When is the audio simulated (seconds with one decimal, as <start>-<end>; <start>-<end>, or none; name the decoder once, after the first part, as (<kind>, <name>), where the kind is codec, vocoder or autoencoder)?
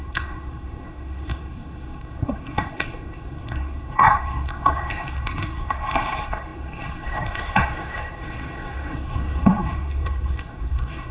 0.0-11.1 (codec, SNAC)